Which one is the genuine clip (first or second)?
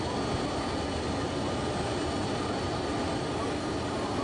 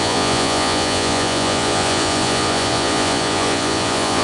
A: first